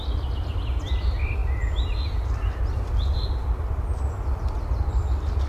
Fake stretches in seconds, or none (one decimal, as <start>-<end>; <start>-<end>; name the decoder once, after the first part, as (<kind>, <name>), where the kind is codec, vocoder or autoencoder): none